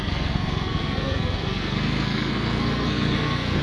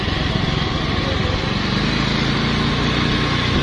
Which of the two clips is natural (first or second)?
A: second